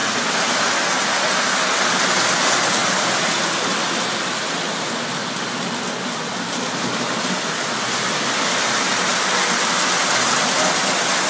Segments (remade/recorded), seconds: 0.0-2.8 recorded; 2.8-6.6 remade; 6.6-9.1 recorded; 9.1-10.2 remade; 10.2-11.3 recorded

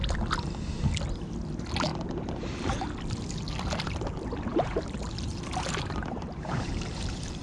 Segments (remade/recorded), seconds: 0.0-4.5 recorded; 4.5-7.4 remade